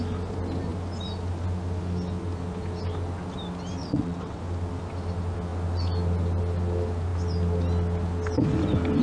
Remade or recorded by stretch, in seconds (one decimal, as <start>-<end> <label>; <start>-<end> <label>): 0.0-3.8 recorded; 3.8-4.4 remade; 4.4-9.0 recorded